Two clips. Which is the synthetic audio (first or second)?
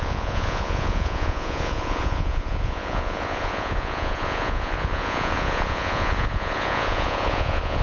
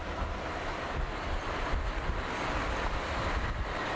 first